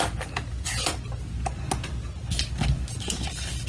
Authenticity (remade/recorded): recorded